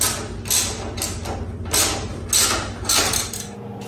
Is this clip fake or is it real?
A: real